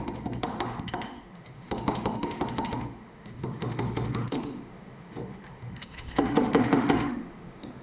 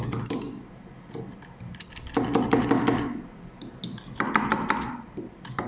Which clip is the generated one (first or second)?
first